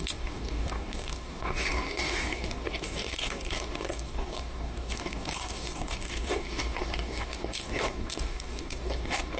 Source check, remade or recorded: remade